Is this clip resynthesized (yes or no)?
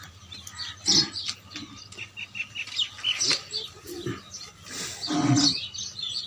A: no